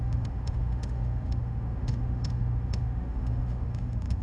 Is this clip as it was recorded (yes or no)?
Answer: no